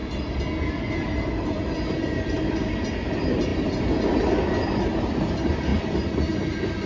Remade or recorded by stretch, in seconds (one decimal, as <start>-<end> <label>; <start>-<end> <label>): 0.0-6.9 recorded